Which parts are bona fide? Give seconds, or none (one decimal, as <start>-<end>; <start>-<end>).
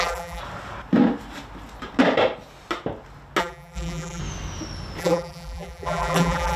0.4-3.4; 4.2-5.0